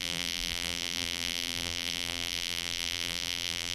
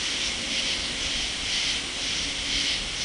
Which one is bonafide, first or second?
second